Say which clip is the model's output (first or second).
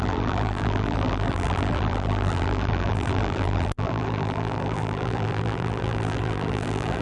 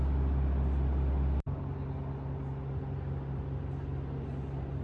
first